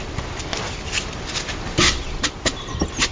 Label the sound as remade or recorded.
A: recorded